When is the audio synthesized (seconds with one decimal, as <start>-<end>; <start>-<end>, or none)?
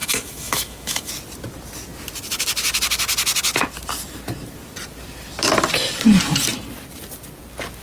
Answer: 0.0-1.1